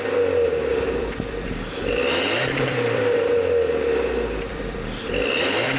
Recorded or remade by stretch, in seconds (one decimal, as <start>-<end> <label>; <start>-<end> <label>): 0.0-0.7 recorded; 0.7-3.3 remade; 3.3-4.5 recorded; 4.5-5.8 remade